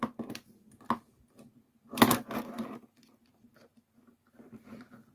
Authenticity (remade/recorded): recorded